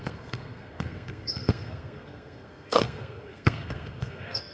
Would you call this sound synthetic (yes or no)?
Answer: yes